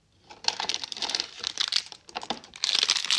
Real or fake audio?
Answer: fake